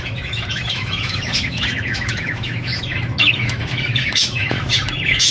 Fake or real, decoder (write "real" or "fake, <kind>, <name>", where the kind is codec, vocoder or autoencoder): fake, autoencoder, DAC-VAE